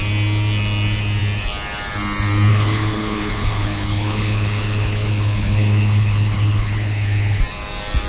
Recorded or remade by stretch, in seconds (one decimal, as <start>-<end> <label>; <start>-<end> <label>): 0.0-2.5 recorded; 2.5-7.4 remade; 7.4-8.1 recorded